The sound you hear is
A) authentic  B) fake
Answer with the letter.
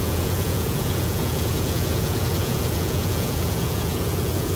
B